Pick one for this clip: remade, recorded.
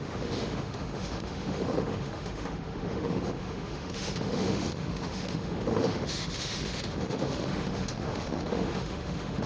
remade